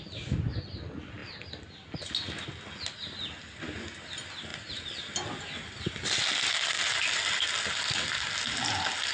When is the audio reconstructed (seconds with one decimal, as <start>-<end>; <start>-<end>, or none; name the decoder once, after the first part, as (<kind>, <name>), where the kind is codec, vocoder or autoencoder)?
none